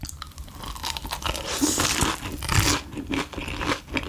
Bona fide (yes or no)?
yes